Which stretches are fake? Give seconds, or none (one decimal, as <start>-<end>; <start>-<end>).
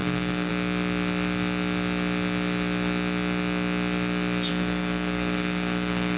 0.0-0.5; 4.5-6.2